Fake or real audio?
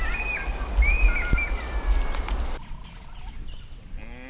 real